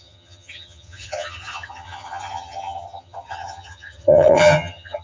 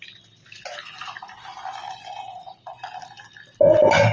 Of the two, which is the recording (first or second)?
second